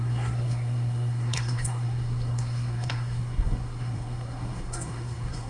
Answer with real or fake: fake